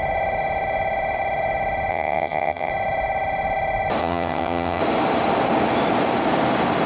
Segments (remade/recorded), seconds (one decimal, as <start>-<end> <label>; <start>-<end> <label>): 0.0-1.9 recorded; 1.9-2.7 remade; 2.7-4.0 recorded; 4.0-4.8 remade; 4.8-6.9 recorded